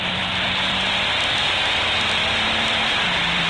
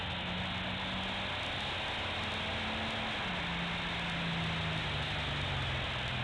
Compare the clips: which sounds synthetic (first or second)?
first